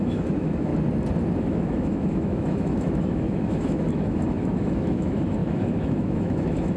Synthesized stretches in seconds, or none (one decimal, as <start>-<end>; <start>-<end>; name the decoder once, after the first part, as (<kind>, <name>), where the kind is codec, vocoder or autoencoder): 0.0-0.7 (autoencoder, DAC-VAE); 1.4-6.8